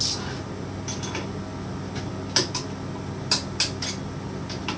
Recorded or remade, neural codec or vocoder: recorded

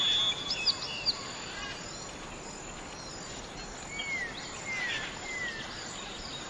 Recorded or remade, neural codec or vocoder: recorded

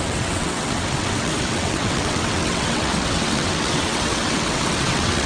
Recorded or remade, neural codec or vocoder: remade, vocoder, WaveNeXt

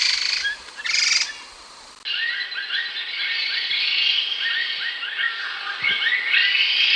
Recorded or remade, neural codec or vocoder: recorded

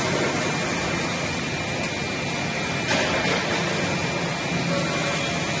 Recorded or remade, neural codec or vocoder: recorded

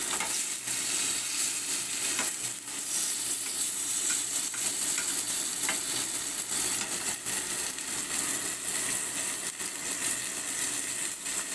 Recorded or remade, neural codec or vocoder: recorded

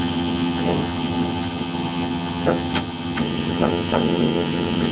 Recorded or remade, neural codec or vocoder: remade, vocoder, HiFi-GAN